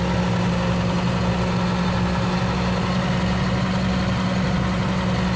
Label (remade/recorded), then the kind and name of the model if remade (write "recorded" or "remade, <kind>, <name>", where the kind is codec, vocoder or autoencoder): recorded